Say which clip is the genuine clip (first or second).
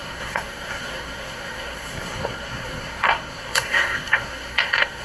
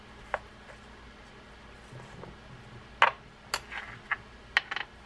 second